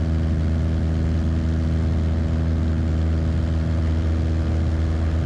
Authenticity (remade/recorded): recorded